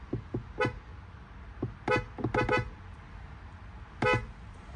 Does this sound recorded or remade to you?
recorded